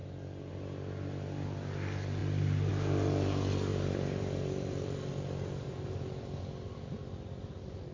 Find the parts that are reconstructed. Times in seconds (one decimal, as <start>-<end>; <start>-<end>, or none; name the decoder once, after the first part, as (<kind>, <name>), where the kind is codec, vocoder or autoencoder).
0.0-0.5 (vocoder, BigVGAN v2); 3.7-6.4